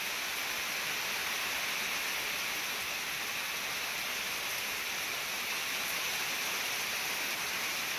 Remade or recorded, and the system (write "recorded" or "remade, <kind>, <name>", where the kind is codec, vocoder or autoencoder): recorded